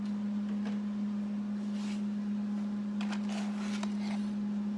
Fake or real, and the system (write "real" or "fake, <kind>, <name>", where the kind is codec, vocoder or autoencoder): real